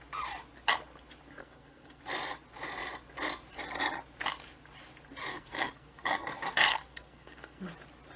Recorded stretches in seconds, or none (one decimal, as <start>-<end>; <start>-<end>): 0.0-1.4; 2.0-5.3; 7.6-8.2